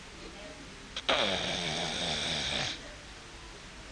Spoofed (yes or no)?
no